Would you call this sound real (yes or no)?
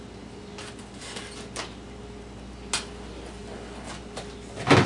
yes